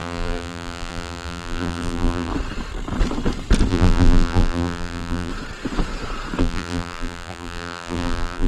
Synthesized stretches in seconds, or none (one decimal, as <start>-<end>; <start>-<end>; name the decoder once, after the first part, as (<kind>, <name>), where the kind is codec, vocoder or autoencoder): 0.0-2.3 (vocoder, BigVGAN v2); 3.7-5.3; 6.4-8.5